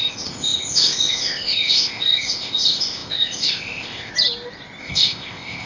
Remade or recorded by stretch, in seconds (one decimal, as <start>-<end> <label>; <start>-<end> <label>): 0.0-4.1 remade; 4.1-4.8 recorded; 4.8-5.7 remade